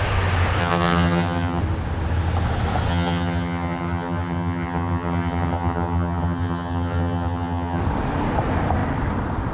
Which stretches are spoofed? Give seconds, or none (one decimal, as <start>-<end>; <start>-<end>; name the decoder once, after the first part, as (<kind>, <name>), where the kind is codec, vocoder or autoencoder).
0.6-1.6 (vocoder, HiFi-GAN); 2.9-7.8